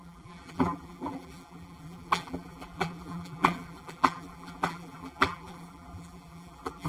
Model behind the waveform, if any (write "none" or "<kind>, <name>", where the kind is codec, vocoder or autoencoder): vocoder, BigVGAN v2